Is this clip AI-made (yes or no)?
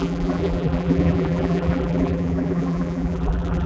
yes